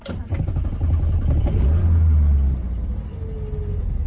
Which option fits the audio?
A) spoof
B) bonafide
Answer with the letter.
B